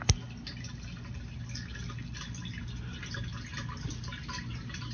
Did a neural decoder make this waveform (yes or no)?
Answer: no